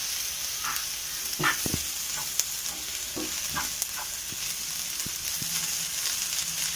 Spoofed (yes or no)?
no